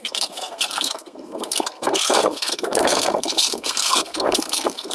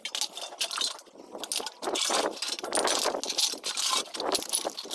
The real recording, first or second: second